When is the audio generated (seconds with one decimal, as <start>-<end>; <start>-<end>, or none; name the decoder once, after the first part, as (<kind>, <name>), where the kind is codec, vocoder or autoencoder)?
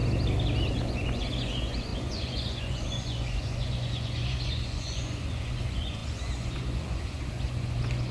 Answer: 0.7-8.1 (vocoder, Vocos)